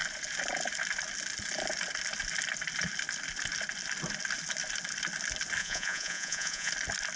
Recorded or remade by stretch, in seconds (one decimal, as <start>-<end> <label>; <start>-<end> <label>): 0.0-5.6 recorded; 5.6-6.7 remade; 6.7-7.2 recorded

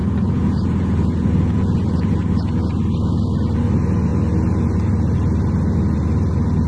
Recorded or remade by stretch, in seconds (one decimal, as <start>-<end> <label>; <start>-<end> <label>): 0.0-2.1 remade; 2.1-6.7 recorded

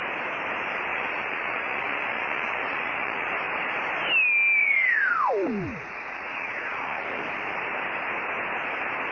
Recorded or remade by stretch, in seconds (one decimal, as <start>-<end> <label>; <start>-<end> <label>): 0.0-0.9 recorded; 0.9-3.3 remade; 3.3-4.6 recorded; 4.6-5.3 remade; 5.3-5.7 recorded; 5.7-7.2 remade; 7.2-9.1 recorded